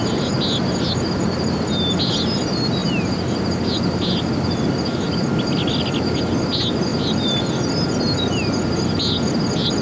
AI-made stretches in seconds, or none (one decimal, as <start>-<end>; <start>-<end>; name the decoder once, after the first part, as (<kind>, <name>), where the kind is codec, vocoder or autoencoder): 6.9-7.4 (vocoder, BigVGAN v2)